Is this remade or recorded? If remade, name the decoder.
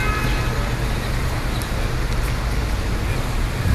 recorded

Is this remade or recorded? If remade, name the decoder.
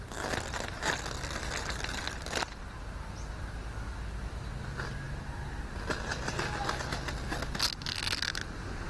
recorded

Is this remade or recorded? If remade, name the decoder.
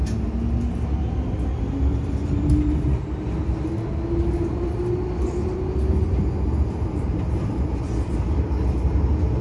recorded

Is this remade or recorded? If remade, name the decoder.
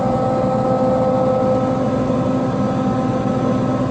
recorded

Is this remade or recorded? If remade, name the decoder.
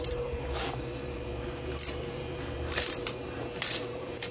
remade, vocoder, BigVGAN v2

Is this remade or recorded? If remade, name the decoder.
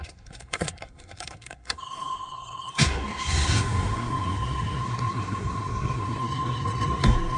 remade, codec, SNAC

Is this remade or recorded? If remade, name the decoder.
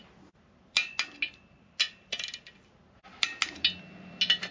recorded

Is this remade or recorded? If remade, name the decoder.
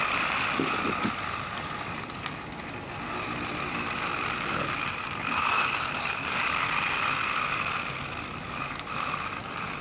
remade, vocoder, BigVGAN v2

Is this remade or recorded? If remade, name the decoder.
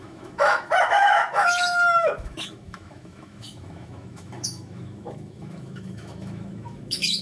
remade, autoencoder, DAC-VAE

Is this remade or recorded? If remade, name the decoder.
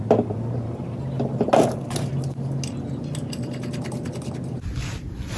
recorded